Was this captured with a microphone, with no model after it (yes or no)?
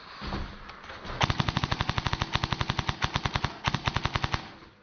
yes